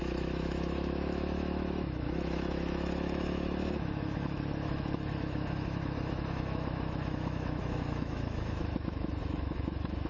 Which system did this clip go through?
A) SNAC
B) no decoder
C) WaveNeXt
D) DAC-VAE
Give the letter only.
D